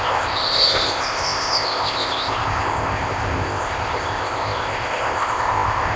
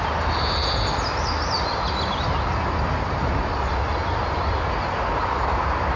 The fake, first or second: first